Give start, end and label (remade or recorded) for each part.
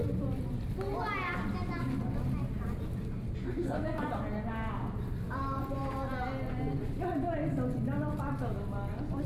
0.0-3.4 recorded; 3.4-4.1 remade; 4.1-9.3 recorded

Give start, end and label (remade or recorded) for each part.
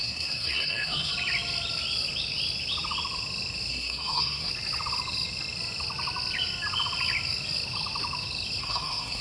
0.0-1.1 remade; 1.1-3.7 recorded; 3.7-4.5 remade; 4.5-8.6 recorded; 8.6-9.2 remade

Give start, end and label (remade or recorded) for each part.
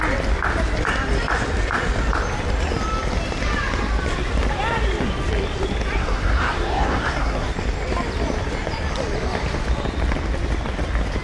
0.0-6.0 recorded; 6.0-7.5 remade; 7.5-11.2 recorded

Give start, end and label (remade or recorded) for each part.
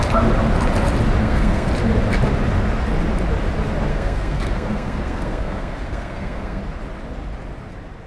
0.0-1.2 recorded; 1.2-1.7 remade; 1.7-3.9 recorded; 3.9-6.6 remade; 6.6-8.1 recorded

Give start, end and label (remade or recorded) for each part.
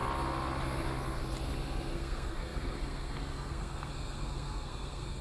0.0-1.9 recorded; 1.9-5.2 remade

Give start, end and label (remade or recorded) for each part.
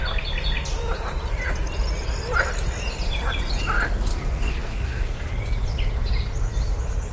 0.0-4.1 recorded; 4.1-5.3 remade; 5.3-7.1 recorded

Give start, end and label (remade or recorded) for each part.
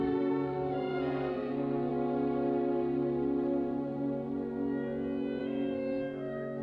0.0-1.9 remade; 1.9-5.4 recorded; 5.4-6.6 remade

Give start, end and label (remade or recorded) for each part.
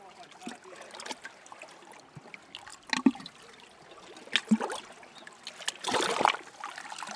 0.0-7.2 recorded